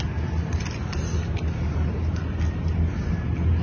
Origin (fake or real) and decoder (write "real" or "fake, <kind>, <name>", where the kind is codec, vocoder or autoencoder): real